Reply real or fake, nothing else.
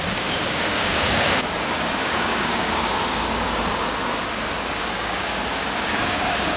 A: fake